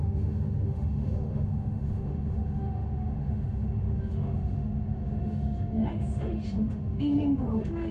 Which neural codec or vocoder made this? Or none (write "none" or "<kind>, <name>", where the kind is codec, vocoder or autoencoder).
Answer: autoencoder, DAC-VAE